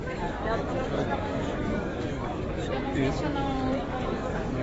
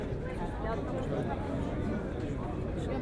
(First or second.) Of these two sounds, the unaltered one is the second